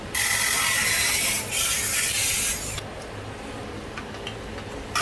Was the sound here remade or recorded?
recorded